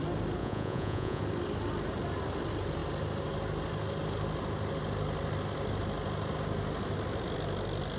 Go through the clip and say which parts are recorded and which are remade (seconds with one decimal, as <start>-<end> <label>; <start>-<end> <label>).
0.0-0.4 recorded; 0.4-1.2 remade; 1.2-8.0 recorded